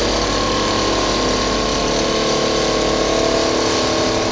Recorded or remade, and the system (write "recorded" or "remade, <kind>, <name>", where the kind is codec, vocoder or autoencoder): recorded